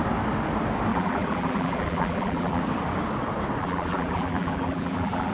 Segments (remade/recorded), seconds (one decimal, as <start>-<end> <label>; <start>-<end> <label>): 0.0-0.9 recorded; 0.9-2.6 remade; 2.6-3.6 recorded; 3.6-5.3 remade